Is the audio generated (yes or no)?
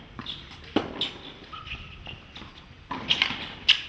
no